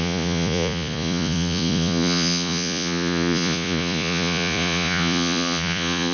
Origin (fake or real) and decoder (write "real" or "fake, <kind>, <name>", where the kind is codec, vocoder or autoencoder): fake, vocoder, Vocos